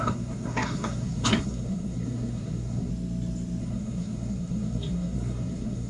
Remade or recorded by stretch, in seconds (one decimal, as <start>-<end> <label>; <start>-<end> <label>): 0.0-2.9 remade; 2.9-3.6 recorded; 3.6-5.9 remade